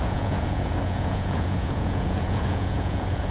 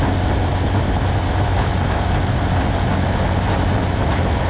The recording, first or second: second